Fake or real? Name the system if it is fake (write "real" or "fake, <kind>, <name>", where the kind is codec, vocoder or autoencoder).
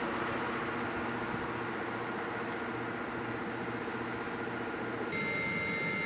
real